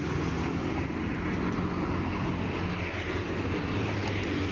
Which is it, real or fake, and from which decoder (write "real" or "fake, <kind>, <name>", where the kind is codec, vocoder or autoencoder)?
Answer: real